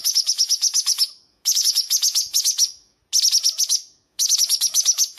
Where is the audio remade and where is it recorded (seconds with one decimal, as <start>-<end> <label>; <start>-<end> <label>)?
0.0-3.0 remade; 3.0-3.6 recorded; 3.6-5.2 remade

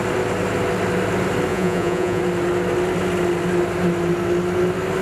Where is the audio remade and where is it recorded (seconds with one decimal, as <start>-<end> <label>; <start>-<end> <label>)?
0.0-1.5 recorded; 1.5-2.2 remade; 2.2-5.0 recorded

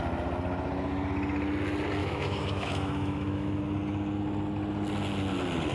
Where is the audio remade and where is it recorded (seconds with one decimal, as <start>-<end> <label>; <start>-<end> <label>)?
0.0-2.0 recorded; 2.0-3.6 remade; 3.6-5.7 recorded

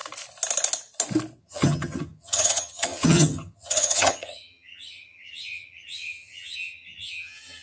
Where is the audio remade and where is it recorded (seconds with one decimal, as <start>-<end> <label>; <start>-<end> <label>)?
0.0-1.4 recorded; 1.4-7.6 remade

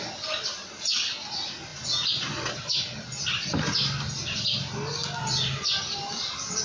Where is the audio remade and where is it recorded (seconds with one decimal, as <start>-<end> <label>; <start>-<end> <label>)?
0.0-6.6 recorded

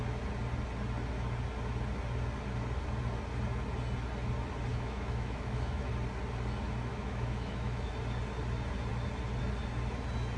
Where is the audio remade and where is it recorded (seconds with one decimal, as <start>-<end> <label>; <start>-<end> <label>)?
0.0-4.7 recorded; 4.7-5.9 remade; 5.9-6.9 recorded; 6.9-7.9 remade; 7.9-10.4 recorded